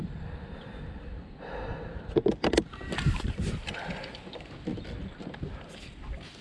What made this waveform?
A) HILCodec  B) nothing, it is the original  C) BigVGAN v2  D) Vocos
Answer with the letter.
B